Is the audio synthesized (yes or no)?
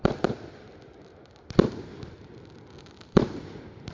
no